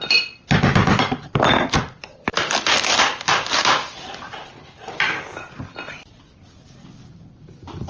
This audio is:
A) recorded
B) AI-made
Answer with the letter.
A